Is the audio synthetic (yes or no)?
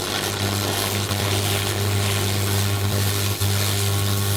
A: yes